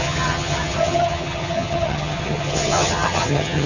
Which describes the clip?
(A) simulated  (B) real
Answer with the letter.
A